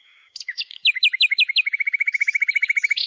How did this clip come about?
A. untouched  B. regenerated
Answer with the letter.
B